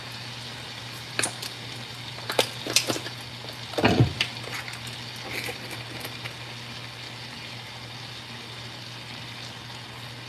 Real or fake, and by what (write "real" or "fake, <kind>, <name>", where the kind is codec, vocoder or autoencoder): real